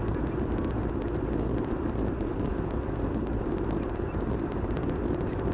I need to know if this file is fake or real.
real